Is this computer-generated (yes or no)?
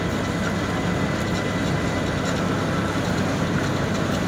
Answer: no